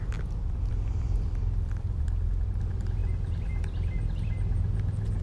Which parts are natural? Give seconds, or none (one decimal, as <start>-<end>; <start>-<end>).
0.0-0.4; 2.6-5.2